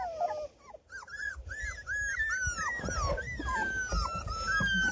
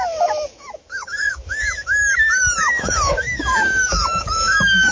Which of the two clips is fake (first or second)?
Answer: second